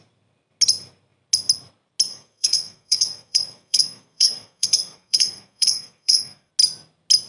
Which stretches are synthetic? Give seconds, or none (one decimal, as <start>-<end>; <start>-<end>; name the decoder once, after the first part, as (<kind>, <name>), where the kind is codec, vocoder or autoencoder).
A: 2.1-6.5 (codec, SNAC)